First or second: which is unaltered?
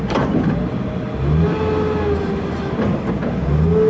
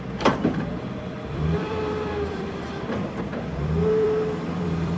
first